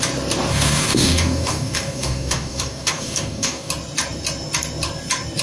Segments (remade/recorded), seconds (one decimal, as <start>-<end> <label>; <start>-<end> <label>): 0.0-0.5 recorded; 0.5-3.7 remade; 3.7-5.4 recorded